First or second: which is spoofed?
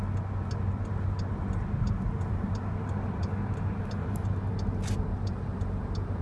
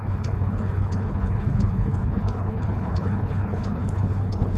second